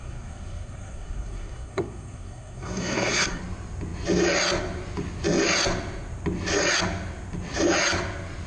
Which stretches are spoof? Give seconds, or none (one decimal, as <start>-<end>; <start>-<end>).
0.0-3.4